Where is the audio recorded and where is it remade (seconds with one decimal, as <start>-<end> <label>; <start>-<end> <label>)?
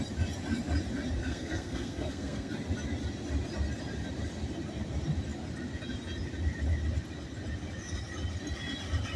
0.0-1.2 recorded; 1.2-2.5 remade; 2.5-9.2 recorded